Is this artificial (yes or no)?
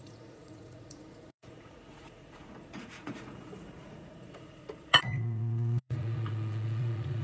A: yes